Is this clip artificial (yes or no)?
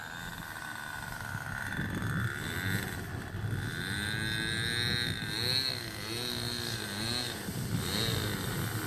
no